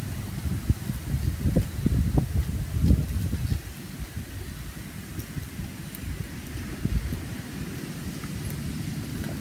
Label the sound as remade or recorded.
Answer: recorded